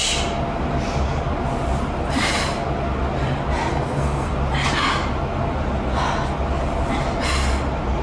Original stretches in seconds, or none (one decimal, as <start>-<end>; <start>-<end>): 0.0-3.7; 4.3-8.0